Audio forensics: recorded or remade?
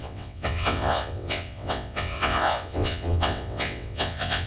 remade